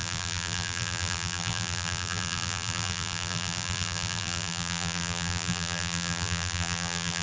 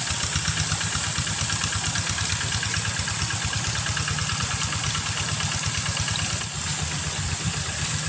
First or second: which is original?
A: second